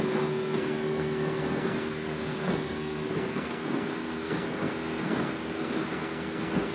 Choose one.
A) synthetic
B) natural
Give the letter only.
A